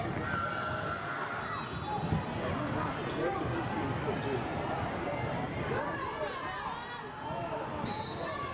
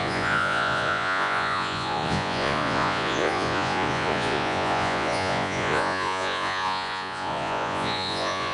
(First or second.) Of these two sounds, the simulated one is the second